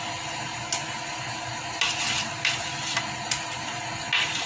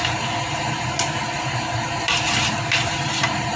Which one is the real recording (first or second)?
first